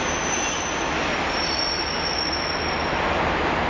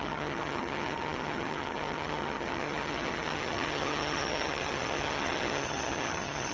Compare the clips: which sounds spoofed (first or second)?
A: second